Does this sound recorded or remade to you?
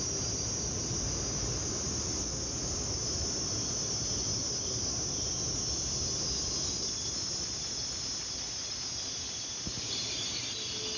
recorded